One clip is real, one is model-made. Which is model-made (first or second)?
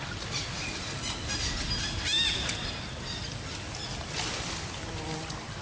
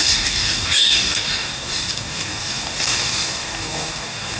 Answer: second